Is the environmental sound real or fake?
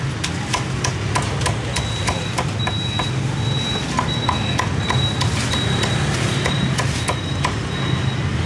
real